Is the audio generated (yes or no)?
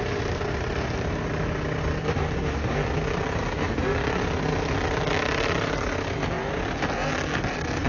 no